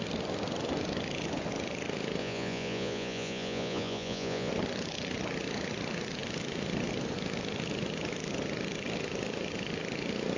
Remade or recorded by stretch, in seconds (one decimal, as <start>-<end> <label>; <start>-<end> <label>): 0.0-2.2 recorded; 2.2-4.5 remade; 4.5-10.4 recorded